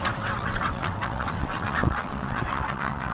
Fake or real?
fake